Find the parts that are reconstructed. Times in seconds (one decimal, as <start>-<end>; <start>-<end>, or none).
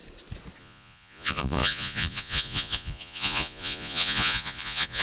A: 0.6-5.0